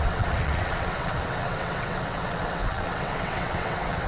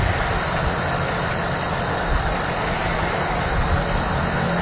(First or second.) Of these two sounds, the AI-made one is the first